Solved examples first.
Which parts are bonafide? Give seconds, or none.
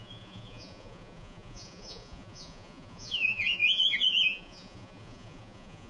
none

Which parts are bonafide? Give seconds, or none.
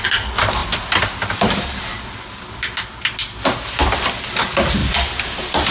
0.0-5.7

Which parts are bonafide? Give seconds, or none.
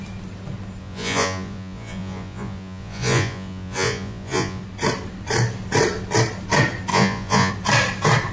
0.0-0.8; 4.6-6.9; 7.5-8.3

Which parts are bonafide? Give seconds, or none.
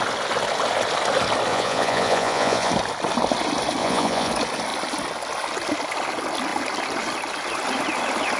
0.0-1.5; 2.7-3.8; 4.3-8.4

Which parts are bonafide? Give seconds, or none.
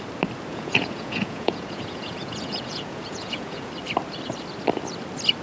0.0-0.5; 3.7-5.4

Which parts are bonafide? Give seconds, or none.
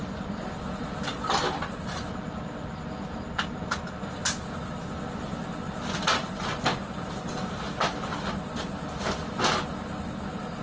0.0-10.6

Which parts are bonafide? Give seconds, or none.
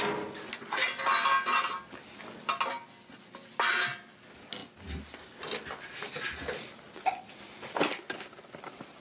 0.0-9.0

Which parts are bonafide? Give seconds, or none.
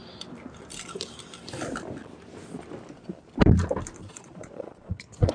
0.0-4.0